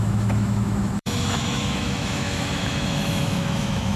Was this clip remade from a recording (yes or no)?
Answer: yes